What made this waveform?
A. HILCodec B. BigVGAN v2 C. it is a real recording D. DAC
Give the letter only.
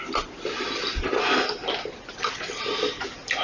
C